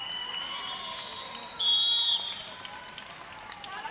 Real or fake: real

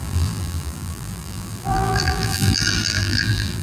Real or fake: fake